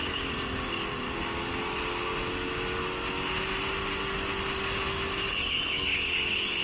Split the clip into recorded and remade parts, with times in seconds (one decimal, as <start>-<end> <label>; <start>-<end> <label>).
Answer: 0.0-6.6 recorded